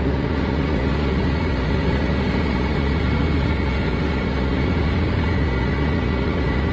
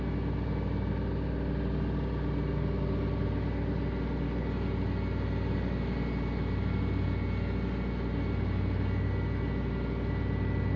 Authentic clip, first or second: second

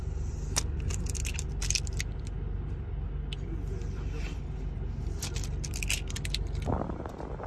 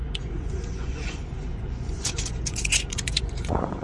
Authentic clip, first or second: first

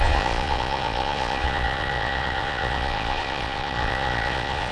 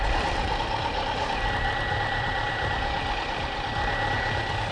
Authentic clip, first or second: second